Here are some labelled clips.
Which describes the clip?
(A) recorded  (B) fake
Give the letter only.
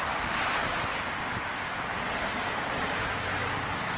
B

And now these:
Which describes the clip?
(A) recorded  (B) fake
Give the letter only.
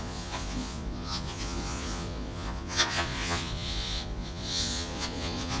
B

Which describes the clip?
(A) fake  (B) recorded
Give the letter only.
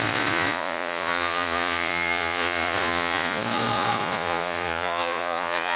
A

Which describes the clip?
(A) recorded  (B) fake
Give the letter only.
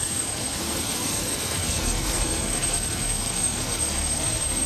B